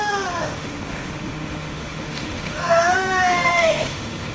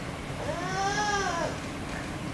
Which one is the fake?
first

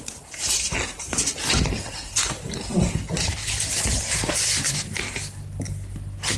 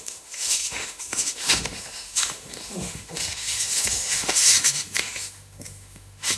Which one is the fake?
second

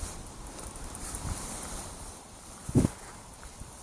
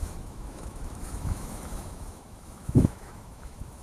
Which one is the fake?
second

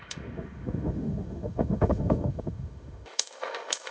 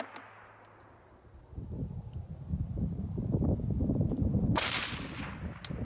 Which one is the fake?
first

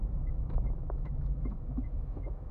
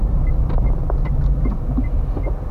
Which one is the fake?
first